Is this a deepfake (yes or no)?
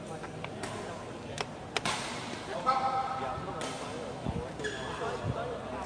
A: no